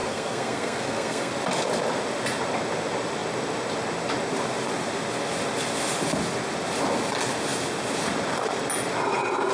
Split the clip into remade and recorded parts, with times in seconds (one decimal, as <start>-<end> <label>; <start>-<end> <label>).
0.0-1.3 remade; 1.3-9.5 recorded